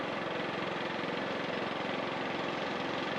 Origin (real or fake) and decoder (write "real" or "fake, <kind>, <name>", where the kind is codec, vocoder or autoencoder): real